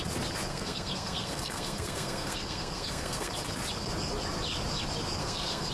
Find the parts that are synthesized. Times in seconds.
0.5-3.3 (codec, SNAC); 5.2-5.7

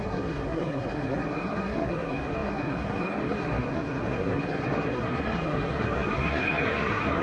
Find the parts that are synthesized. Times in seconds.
0.0-7.2 (codec, SNAC)

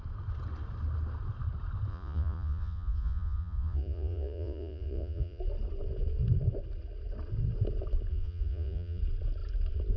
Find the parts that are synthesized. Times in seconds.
1.9-5.4 (vocoder, Vocos); 8.1-9.0

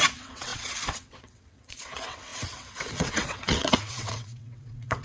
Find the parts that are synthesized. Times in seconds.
0.0-5.0 (vocoder, WaveNeXt)

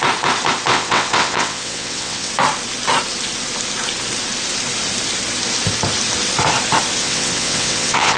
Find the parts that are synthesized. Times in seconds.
0.7-2.3 (vocoder, WaveNeXt); 7.0-8.2

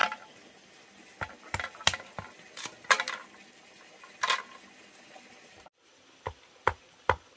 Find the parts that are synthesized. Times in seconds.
none

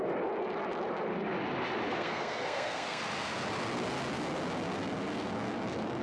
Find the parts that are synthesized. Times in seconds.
1.9-3.0 (codec, SNAC)